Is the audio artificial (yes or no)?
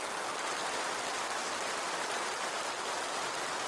no